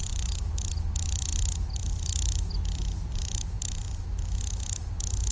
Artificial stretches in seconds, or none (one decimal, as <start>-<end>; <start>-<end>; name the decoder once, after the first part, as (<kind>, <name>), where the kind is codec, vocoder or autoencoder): none